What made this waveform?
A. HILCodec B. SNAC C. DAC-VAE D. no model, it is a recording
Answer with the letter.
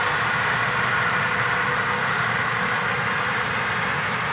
D